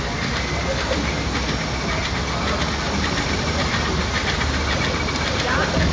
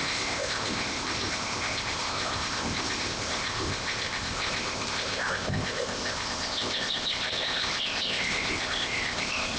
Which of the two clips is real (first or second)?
first